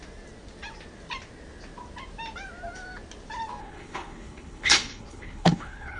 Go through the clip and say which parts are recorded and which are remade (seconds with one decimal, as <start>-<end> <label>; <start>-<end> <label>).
0.0-3.6 recorded; 3.6-6.0 remade